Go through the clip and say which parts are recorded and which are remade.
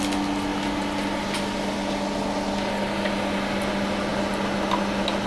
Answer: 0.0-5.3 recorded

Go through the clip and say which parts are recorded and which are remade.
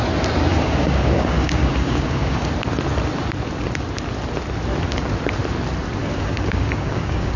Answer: 0.0-0.5 recorded; 0.5-2.5 remade; 2.5-6.0 recorded; 6.0-7.4 remade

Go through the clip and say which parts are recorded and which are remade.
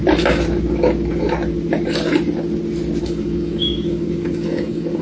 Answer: 0.0-3.0 recorded; 3.0-5.0 remade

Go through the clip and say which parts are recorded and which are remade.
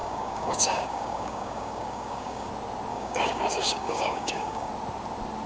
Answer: 0.0-2.5 remade; 2.5-2.9 recorded; 2.9-4.7 remade; 4.7-5.5 recorded